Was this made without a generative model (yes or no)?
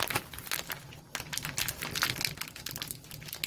yes